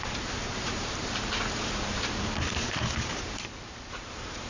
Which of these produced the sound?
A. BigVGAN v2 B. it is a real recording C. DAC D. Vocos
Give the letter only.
A